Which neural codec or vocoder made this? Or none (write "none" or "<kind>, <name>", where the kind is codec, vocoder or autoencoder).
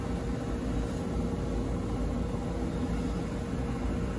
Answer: none